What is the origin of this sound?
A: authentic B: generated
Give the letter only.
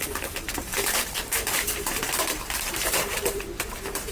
B